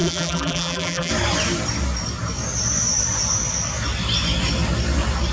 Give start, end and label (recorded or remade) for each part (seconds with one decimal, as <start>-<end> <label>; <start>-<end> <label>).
0.0-1.1 remade; 1.1-5.3 recorded